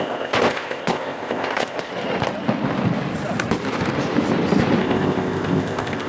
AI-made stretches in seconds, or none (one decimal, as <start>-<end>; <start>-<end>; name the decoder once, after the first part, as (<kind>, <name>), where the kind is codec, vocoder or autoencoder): 0.0-1.9 (codec, ZipCodec); 4.8-6.1